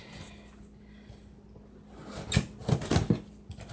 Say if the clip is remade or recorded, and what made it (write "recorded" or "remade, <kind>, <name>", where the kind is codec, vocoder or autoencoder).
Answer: recorded